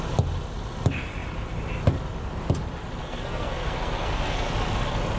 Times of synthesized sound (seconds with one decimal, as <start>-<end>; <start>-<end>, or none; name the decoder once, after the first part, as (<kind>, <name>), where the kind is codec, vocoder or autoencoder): 3.0-4.5 (codec, SNAC)